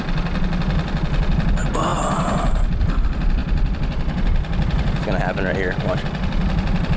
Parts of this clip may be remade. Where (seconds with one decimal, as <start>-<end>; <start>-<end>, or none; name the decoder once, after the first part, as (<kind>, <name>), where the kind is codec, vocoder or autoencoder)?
none